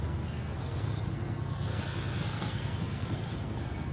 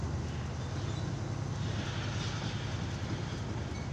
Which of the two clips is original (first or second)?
second